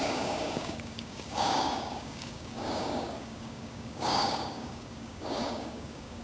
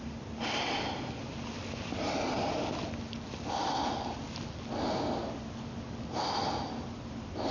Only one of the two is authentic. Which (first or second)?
second